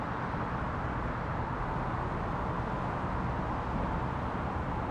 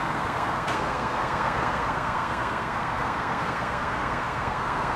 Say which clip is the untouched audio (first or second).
first